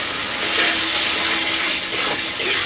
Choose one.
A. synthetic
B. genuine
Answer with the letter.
B